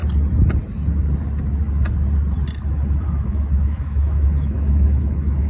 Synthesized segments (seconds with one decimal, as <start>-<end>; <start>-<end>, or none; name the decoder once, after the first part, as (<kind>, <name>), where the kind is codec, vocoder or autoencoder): 3.3-5.5 (autoencoder, DAC-VAE)